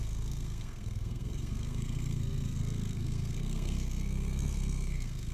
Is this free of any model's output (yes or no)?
no